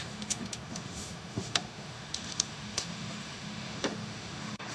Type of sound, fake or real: fake